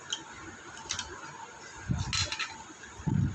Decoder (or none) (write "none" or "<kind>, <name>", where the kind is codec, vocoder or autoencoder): none